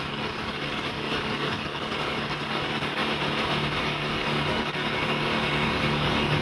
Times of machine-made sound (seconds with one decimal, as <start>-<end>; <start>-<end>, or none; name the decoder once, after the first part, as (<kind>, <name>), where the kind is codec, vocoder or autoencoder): 0.0-3.0 (codec, DAC); 3.8-6.4